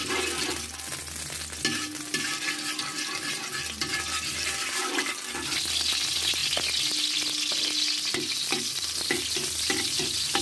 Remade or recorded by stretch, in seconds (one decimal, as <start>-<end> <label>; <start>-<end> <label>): 0.0-2.0 recorded; 2.0-6.4 remade; 6.4-9.2 recorded; 9.2-10.4 remade